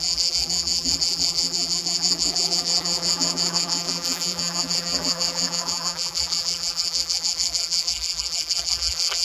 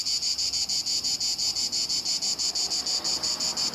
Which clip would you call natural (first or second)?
second